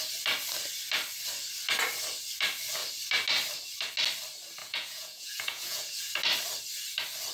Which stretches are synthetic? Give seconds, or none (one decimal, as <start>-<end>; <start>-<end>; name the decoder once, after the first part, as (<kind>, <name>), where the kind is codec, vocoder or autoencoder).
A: 4.6-6.1 (vocoder, Vocos)